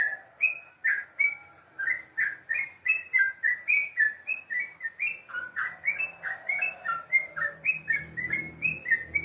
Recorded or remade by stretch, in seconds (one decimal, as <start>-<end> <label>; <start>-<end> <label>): 0.0-9.2 recorded